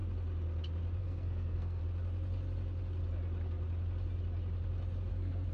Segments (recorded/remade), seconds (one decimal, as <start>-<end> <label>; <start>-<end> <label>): 0.0-1.0 recorded; 1.0-1.8 remade; 1.8-5.1 recorded; 5.1-5.5 remade

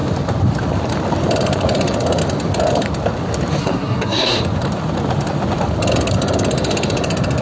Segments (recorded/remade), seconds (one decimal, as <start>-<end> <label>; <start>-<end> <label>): 0.0-3.6 recorded; 3.6-4.4 remade; 4.4-7.4 recorded